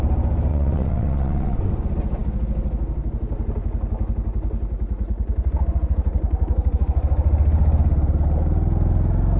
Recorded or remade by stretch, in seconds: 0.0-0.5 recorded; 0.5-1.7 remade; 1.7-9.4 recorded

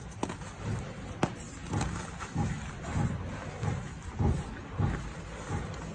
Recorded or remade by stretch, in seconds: 0.0-5.9 recorded

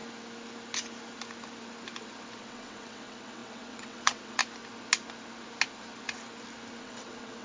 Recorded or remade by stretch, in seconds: 0.0-2.4 recorded; 2.4-4.4 remade; 4.4-6.8 recorded; 6.8-7.4 remade

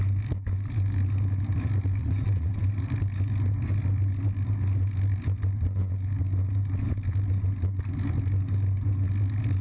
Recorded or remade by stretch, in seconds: 0.0-2.0 recorded; 2.0-2.6 remade; 2.6-9.6 recorded

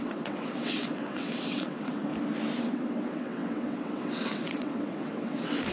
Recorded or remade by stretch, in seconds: 0.0-2.1 remade; 2.1-2.6 recorded; 2.6-5.7 remade

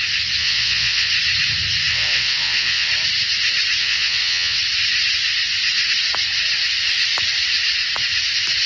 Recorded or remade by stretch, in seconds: 0.0-0.4 recorded; 0.4-1.1 remade; 1.1-1.9 recorded; 1.9-2.9 remade; 2.9-3.8 recorded; 3.8-4.6 remade; 4.6-8.7 recorded